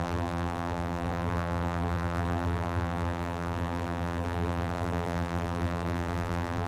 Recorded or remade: remade